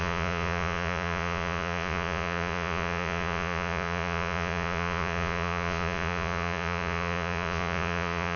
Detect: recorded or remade remade